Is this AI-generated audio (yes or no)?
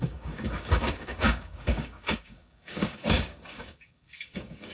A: yes